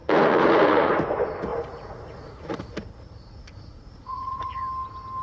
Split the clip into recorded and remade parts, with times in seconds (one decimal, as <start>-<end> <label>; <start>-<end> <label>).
0.0-0.9 remade; 0.9-1.5 recorded; 1.5-4.6 remade; 4.6-5.2 recorded